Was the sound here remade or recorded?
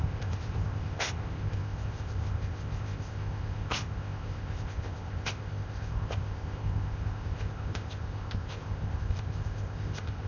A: remade